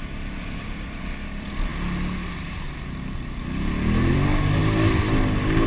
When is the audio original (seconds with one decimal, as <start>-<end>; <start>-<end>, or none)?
1.7-4.1; 4.6-5.7